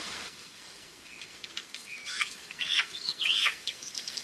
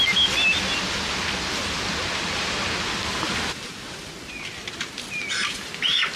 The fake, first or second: first